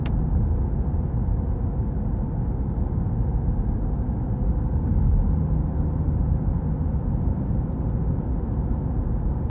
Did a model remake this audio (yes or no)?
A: no